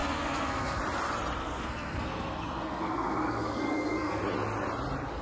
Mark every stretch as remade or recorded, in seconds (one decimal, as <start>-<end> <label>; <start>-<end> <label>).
0.0-0.8 remade; 0.8-1.4 recorded; 1.4-4.2 remade; 4.2-5.2 recorded